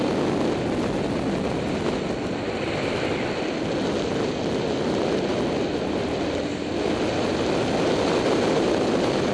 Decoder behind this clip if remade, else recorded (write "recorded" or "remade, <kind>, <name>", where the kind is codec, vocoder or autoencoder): recorded